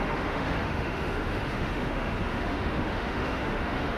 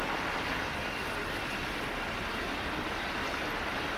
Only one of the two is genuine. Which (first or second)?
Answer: second